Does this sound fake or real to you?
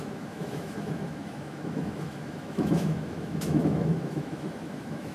fake